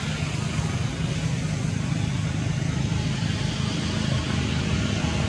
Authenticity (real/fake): real